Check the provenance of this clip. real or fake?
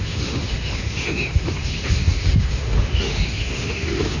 fake